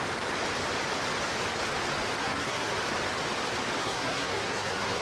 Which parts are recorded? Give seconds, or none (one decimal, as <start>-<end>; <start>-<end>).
0.0-2.2; 2.7-3.8